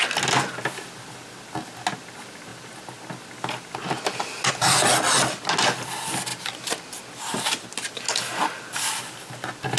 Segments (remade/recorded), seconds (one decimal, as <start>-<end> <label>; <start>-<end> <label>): 0.0-9.8 recorded